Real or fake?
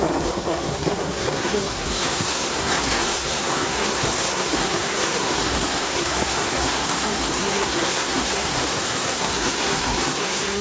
fake